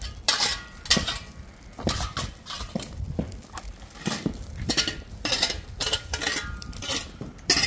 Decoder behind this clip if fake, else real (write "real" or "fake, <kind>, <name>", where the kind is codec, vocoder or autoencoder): real